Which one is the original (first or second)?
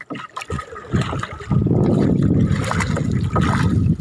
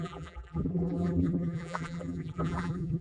first